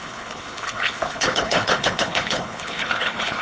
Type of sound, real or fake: fake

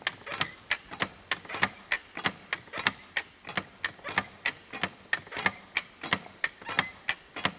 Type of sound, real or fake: real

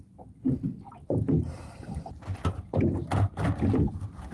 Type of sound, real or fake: real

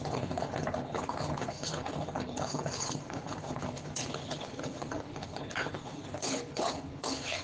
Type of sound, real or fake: fake